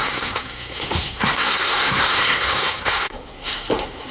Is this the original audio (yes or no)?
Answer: no